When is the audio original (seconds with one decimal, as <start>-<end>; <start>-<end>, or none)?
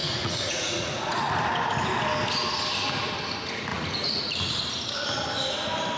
1.3-3.7; 4.5-6.0